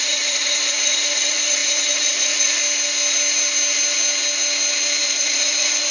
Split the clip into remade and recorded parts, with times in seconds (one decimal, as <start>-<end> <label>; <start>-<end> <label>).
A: 0.0-2.6 remade; 2.6-5.0 recorded; 5.0-5.9 remade